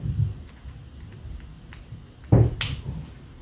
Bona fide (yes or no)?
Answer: yes